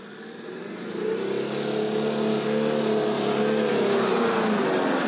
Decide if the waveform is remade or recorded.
recorded